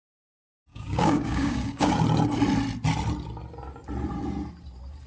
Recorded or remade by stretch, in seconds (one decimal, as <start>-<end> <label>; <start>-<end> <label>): 0.0-0.7 recorded; 0.7-1.9 remade; 1.9-5.1 recorded

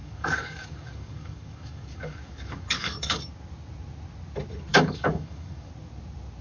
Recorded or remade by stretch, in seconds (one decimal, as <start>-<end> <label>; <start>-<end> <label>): 0.0-3.2 remade; 3.2-4.7 recorded; 4.7-5.7 remade; 5.7-6.4 recorded

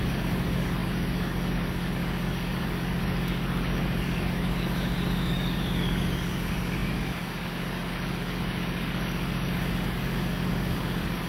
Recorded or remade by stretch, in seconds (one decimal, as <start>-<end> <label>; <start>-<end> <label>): 0.0-11.3 remade

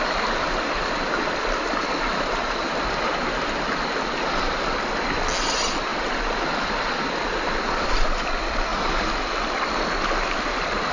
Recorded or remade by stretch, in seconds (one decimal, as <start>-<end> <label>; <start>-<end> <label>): 0.0-10.9 recorded